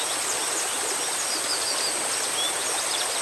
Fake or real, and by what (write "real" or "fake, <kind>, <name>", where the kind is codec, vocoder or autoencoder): real